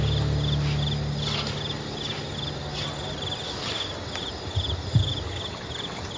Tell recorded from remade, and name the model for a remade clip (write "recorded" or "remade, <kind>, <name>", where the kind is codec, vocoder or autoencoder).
recorded